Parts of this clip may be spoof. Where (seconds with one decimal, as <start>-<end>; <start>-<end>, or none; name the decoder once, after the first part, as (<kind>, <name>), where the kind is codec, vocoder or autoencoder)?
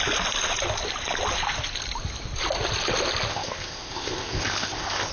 3.3-5.1 (codec, ZipCodec)